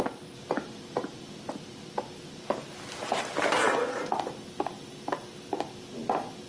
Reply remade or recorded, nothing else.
recorded